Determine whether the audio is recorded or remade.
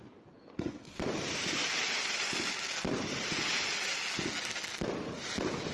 recorded